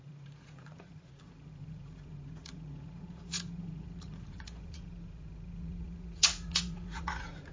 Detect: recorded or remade remade